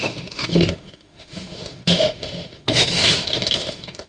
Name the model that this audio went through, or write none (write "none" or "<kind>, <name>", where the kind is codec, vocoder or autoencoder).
autoencoder, DAC-VAE